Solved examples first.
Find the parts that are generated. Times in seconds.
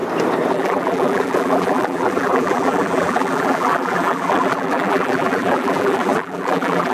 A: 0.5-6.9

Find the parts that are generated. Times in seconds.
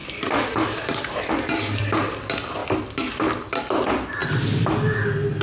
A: 0.0-1.8; 2.6-3.5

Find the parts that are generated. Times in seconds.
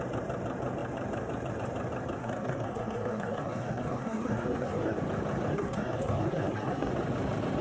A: 2.2-5.0; 5.5-6.9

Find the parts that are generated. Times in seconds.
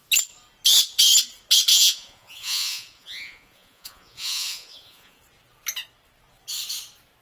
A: 1.7-5.2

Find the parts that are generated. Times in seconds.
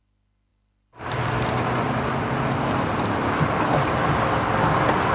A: none